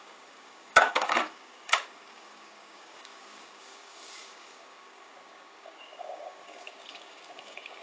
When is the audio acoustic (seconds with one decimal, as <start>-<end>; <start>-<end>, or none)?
none